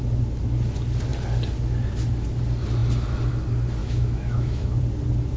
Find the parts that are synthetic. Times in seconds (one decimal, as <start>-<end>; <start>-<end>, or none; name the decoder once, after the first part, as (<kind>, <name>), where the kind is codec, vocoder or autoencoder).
3.8-4.8 (autoencoder, DAC-VAE)